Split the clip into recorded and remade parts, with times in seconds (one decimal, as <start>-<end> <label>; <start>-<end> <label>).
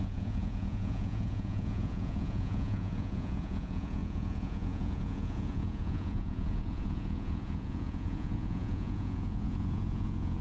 0.0-10.4 remade